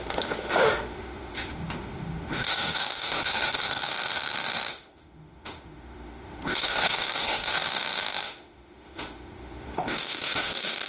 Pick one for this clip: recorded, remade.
remade